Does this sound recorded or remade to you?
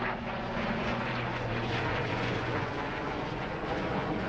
remade